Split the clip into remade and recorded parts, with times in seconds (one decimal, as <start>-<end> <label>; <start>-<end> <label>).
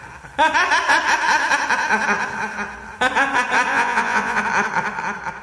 0.0-3.7 recorded; 3.7-4.4 remade; 4.4-5.4 recorded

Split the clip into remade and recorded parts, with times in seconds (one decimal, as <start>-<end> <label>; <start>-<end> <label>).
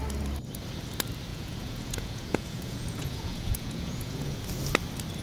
0.0-1.3 recorded; 1.3-4.4 remade; 4.4-5.2 recorded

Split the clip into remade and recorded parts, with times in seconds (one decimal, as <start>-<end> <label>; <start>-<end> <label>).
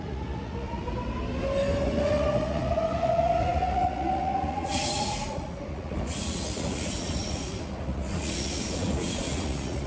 0.0-0.8 remade; 0.8-1.8 recorded; 1.8-9.9 remade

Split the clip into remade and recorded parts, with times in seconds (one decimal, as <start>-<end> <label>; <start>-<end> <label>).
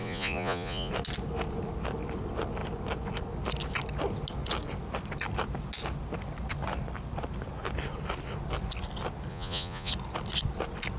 0.0-0.9 remade; 0.9-9.3 recorded; 9.3-9.9 remade; 9.9-11.0 recorded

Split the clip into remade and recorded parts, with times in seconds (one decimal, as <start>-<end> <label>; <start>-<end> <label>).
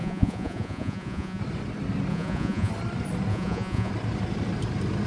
0.0-1.4 remade; 1.4-2.1 recorded; 2.1-2.7 remade; 2.7-3.3 recorded; 3.3-3.9 remade; 3.9-5.1 recorded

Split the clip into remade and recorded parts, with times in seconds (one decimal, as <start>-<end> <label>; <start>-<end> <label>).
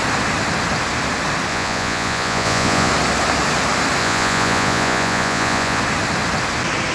0.0-1.5 recorded; 1.5-2.9 remade; 2.9-4.0 recorded; 4.0-5.8 remade; 5.8-6.9 recorded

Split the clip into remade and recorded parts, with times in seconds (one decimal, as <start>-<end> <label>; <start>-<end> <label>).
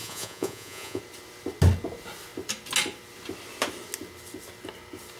0.0-1.0 remade; 1.0-5.2 recorded